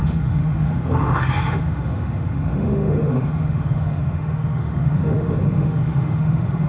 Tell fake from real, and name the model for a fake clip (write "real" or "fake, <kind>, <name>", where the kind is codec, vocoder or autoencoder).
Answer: fake, autoencoder, DAC-VAE